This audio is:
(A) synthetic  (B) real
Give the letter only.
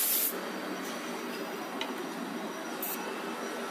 B